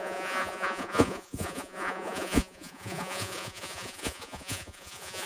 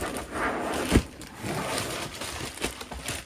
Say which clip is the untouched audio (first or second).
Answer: second